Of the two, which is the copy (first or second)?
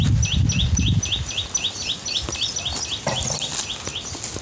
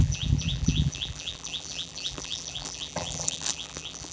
second